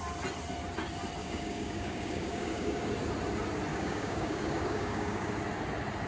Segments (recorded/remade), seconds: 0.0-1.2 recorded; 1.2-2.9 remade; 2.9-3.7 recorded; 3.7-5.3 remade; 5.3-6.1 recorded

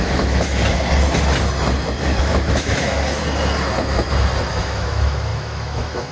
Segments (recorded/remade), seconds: 0.0-0.6 remade; 0.6-2.2 recorded; 2.2-3.2 remade; 3.2-4.5 recorded; 4.5-6.1 remade

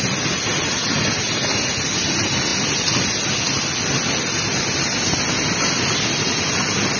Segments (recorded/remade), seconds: 0.0-7.0 recorded